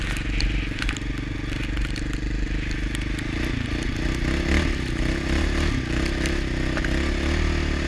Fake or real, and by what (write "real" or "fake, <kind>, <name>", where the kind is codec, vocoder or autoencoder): real